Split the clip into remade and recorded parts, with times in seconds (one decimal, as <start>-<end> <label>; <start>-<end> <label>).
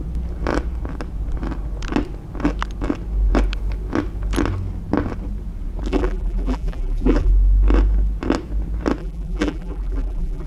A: 0.0-5.9 recorded; 5.9-7.3 remade; 7.3-9.0 recorded; 9.0-10.5 remade